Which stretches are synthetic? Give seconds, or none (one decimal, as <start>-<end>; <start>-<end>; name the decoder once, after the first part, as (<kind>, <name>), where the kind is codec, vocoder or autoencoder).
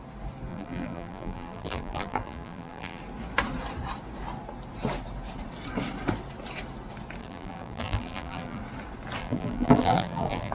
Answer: 0.5-3.0 (vocoder, BigVGAN v2); 7.2-8.6; 9.2-10.5